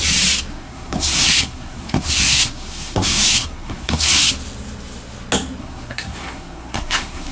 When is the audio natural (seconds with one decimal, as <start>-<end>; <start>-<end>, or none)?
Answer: 0.0-0.5; 4.3-5.6